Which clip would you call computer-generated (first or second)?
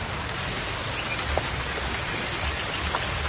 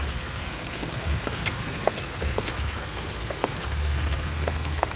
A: second